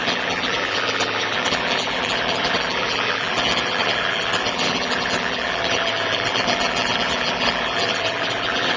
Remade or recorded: remade